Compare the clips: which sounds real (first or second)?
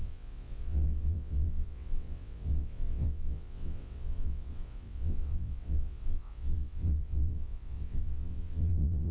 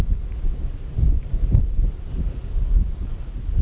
second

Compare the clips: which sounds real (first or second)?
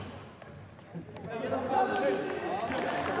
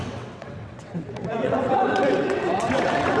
first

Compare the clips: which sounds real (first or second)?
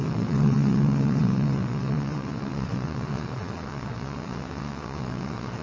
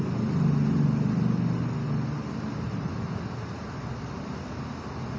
second